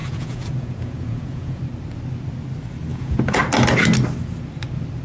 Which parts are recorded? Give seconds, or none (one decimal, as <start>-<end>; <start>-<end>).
1.6-2.9; 3.4-5.0